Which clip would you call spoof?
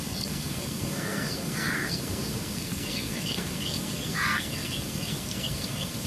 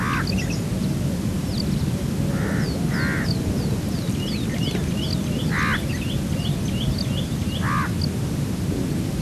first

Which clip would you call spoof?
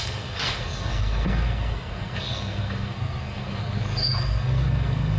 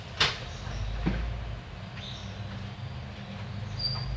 first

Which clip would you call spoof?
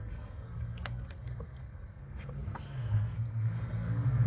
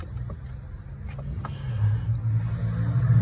first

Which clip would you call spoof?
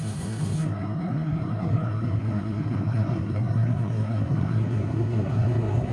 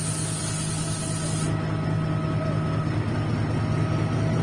first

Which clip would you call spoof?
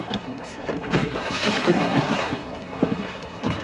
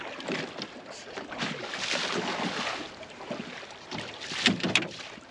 first